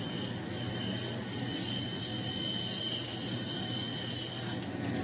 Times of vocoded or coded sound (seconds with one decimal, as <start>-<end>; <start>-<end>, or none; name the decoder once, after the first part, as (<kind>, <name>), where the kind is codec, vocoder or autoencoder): none